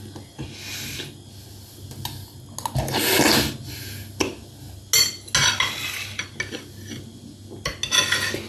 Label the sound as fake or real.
real